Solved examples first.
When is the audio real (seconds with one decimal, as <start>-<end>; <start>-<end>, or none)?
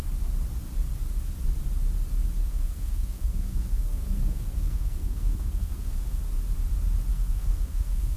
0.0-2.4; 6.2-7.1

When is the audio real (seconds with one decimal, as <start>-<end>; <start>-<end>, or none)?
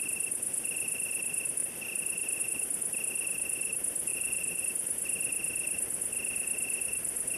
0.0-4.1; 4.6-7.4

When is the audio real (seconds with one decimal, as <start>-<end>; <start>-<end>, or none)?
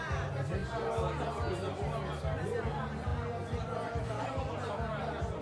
0.0-5.4